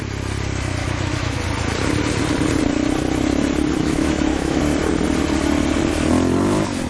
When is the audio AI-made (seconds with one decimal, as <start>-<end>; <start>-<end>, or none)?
0.8-1.4; 3.8-4.6